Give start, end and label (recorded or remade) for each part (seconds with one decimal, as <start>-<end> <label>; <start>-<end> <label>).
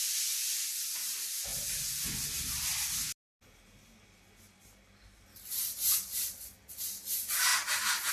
0.0-8.1 recorded